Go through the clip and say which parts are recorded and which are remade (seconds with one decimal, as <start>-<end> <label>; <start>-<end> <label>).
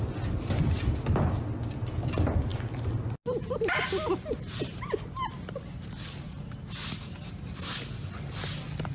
0.0-8.9 recorded